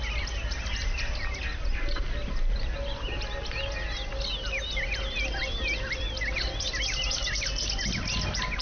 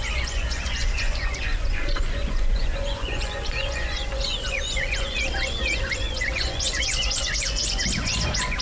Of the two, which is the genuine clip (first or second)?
first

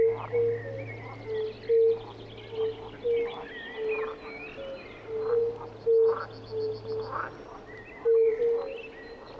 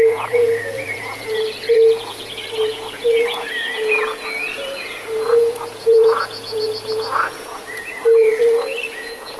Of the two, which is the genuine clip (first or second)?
first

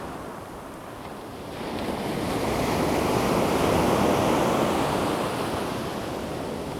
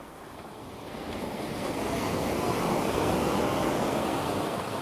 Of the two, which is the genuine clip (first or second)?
first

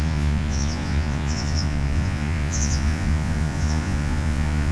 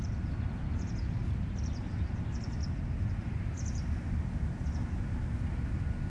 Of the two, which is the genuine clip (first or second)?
second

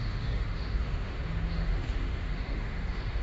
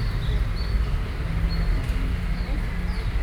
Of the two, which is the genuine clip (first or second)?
second